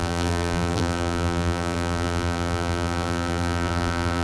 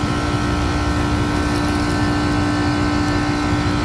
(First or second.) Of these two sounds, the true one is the second